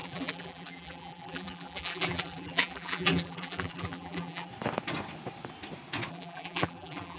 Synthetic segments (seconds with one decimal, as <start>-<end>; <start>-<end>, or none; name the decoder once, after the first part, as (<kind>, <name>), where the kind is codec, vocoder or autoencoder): 0.0-4.5 (vocoder, BigVGAN v2); 6.1-7.2